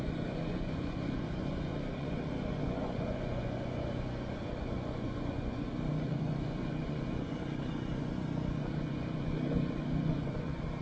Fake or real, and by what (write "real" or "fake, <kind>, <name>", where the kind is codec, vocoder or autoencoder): fake, vocoder, Vocos